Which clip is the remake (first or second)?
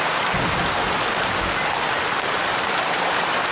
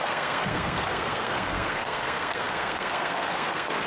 second